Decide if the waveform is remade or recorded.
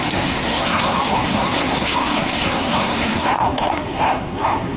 remade